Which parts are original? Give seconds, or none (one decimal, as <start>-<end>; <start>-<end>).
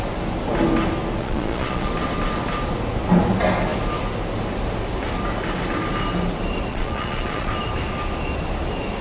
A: 0.0-1.2; 1.9-6.7; 7.5-9.0